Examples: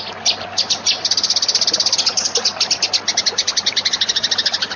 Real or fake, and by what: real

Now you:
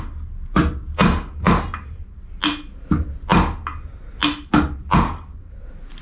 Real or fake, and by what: real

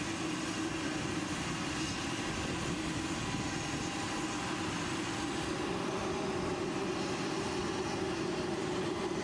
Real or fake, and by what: real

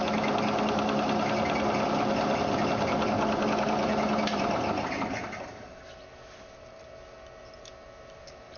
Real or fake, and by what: real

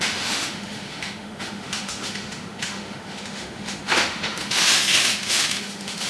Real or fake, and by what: fake, autoencoder, DAC-VAE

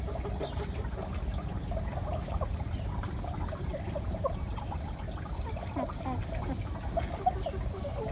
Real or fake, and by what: real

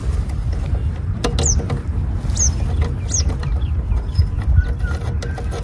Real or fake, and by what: real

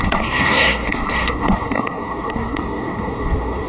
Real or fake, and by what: fake, codec, SNAC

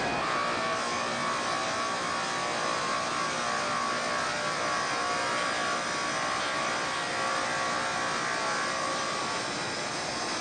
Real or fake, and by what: real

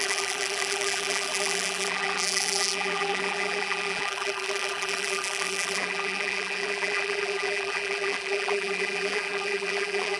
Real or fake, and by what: fake, vocoder, BigVGAN v2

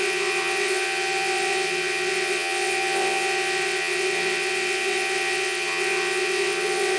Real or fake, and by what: fake, vocoder, WaveNeXt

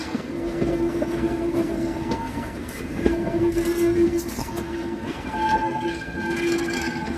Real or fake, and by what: fake, codec, SNAC